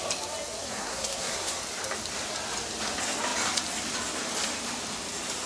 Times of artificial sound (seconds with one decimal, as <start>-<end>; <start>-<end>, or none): 0.6-1.6